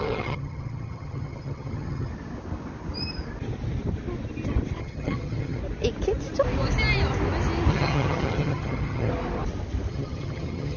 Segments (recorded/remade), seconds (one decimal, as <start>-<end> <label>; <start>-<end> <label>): 0.0-2.1 remade; 2.1-4.8 recorded; 4.8-5.6 remade; 5.6-7.7 recorded; 7.7-9.1 remade; 9.1-9.9 recorded; 9.9-10.8 remade